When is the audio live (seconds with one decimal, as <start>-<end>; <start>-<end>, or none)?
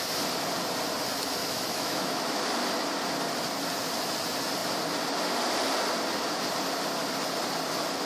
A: 0.0-1.4; 2.4-8.1